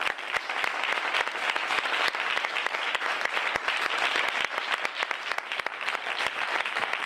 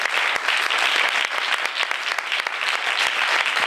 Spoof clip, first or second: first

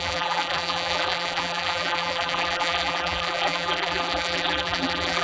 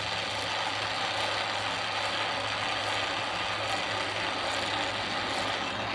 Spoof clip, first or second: first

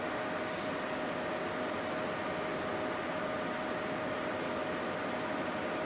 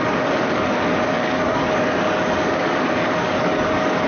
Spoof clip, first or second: second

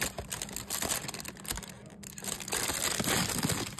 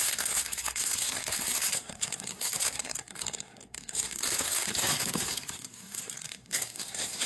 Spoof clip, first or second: second